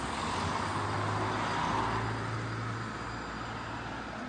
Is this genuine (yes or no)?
yes